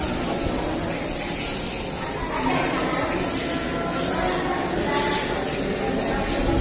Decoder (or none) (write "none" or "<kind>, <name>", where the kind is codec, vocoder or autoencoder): none